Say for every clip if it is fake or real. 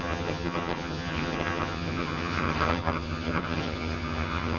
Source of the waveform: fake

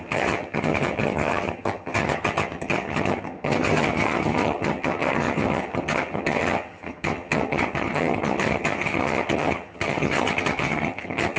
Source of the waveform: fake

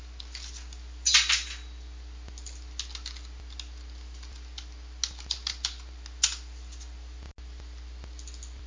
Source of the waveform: real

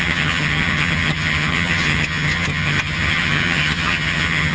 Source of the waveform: fake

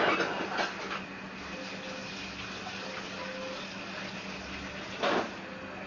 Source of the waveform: real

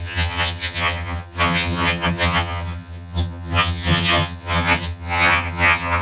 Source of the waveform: fake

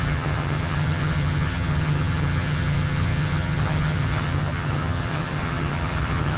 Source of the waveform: fake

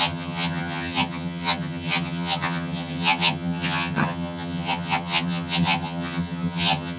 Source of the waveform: fake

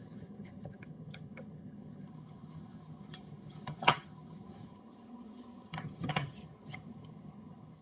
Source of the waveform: fake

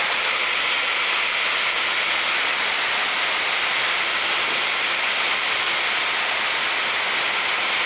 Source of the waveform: real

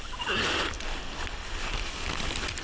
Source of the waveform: real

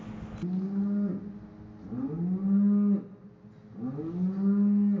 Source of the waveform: real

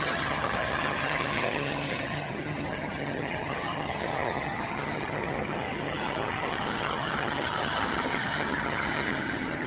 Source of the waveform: fake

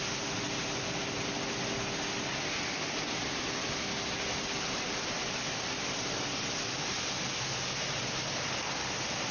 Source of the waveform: real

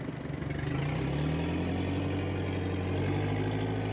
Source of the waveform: real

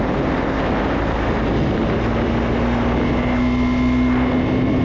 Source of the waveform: real